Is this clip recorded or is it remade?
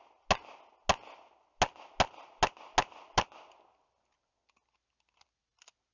recorded